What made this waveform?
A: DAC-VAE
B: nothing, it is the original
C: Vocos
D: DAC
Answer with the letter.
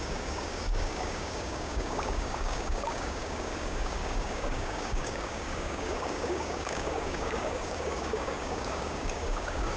D